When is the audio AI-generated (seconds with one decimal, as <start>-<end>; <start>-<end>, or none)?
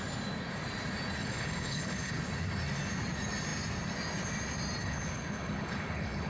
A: 1.2-2.1; 4.8-6.3